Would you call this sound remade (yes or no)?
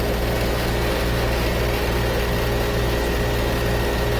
no